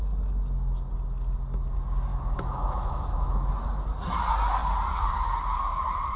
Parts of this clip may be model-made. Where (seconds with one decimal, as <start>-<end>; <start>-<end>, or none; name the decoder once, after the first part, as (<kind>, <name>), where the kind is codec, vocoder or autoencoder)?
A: 2.1-3.5 (autoencoder, DAC-VAE)